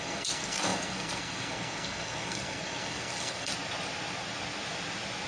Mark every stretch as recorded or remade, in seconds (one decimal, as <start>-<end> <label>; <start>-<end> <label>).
0.0-3.5 remade; 3.5-5.3 recorded